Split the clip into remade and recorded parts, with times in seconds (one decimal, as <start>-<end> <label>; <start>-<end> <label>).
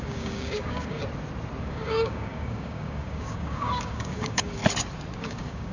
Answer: 0.0-1.0 remade; 1.0-1.6 recorded; 1.6-4.6 remade; 4.6-5.2 recorded; 5.2-5.7 remade